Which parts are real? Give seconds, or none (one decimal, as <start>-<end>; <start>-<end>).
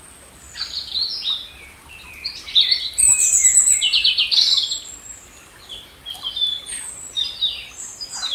0.0-8.3